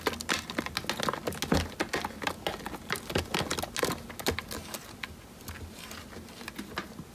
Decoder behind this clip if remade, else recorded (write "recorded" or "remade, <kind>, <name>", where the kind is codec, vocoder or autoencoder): recorded